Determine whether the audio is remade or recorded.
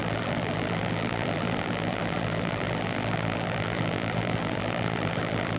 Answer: remade